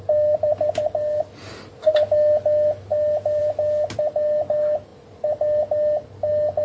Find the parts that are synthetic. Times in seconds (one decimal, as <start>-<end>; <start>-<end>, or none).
none